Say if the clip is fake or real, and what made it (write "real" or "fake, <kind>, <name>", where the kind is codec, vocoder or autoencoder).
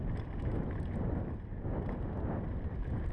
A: real